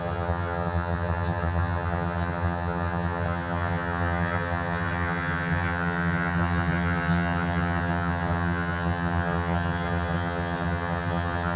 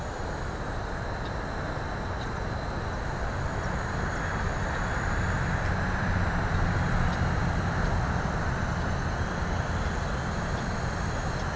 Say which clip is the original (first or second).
second